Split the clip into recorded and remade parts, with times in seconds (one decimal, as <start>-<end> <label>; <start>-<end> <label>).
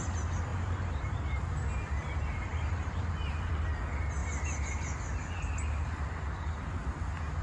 0.0-0.5 recorded; 0.5-1.4 remade; 1.4-2.5 recorded; 2.5-3.1 remade; 3.1-7.4 recorded